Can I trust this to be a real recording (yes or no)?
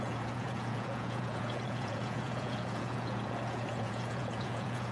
no